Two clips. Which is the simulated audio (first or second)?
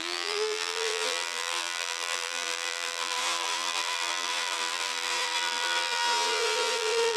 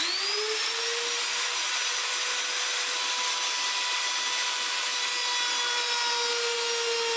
first